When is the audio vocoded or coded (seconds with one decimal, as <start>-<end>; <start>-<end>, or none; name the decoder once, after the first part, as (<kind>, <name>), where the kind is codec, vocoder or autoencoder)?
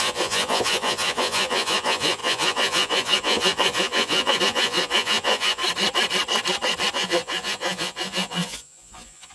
0.0-5.6 (vocoder, Vocos); 6.9-9.3